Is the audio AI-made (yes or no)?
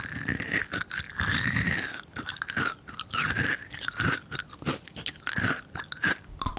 no